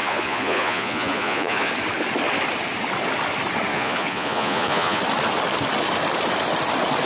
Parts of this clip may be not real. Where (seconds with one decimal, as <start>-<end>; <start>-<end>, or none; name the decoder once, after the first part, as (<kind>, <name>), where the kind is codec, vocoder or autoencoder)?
0.0-1.7 (vocoder, Vocos); 3.7-5.0